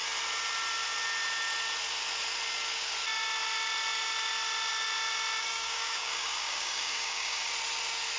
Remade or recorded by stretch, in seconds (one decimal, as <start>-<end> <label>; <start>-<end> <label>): 0.0-5.5 recorded; 5.5-7.5 remade; 7.5-8.2 recorded